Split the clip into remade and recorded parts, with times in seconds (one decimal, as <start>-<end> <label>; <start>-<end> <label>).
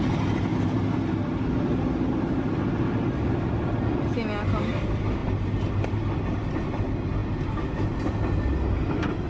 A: 0.0-9.3 recorded